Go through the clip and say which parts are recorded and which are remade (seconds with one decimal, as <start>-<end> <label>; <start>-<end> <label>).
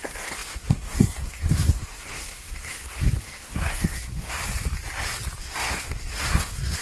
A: 0.0-4.4 remade; 4.4-5.4 recorded; 5.4-6.8 remade